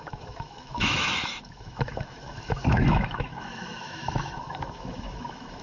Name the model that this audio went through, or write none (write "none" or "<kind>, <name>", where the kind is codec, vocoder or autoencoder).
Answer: autoencoder, DAC-VAE